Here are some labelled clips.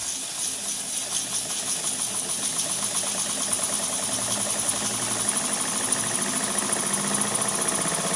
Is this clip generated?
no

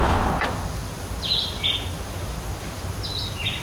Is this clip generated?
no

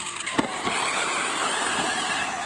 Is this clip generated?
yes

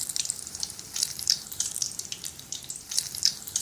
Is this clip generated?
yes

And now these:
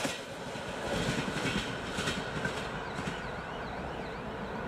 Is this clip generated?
no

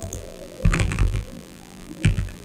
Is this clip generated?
yes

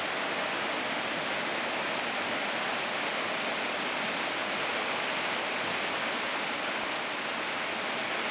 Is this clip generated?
no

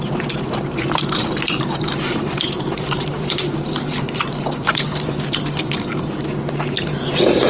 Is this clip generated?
yes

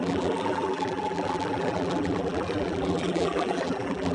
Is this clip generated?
yes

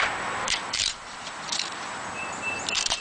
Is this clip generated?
yes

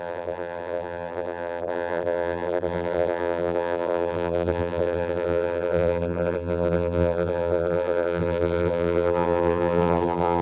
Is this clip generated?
yes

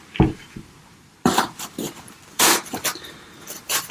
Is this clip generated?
yes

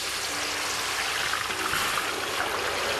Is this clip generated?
no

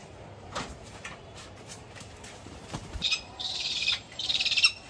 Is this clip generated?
yes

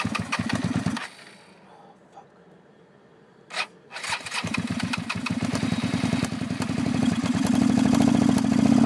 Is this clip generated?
no